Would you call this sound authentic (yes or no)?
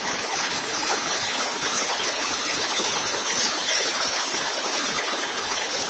no